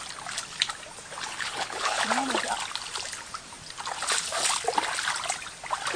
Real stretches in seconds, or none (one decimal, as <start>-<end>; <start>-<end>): 0.0-1.3; 2.0-6.0